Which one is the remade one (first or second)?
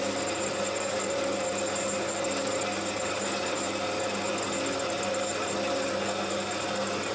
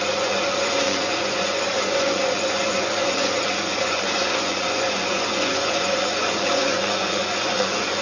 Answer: second